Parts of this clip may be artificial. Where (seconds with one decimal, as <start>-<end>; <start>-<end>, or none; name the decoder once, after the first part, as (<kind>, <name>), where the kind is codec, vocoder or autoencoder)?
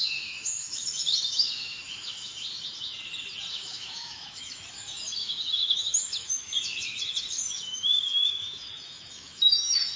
0.0-2.3 (autoencoder, DAC-VAE); 3.5-10.0